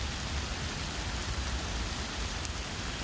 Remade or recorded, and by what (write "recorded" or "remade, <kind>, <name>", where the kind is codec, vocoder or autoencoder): recorded